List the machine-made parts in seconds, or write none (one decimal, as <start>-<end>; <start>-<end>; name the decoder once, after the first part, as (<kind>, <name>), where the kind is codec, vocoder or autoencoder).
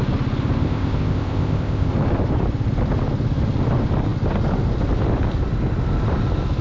0.6-1.9 (codec, ZipCodec)